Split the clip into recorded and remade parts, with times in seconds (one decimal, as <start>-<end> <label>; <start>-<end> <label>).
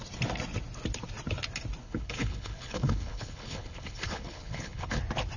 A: 0.0-1.8 recorded; 1.8-5.0 remade; 5.0-5.4 recorded